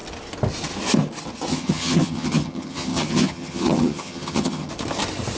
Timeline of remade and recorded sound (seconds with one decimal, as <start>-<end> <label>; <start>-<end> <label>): 0.0-1.5 recorded; 1.5-4.7 remade; 4.7-5.4 recorded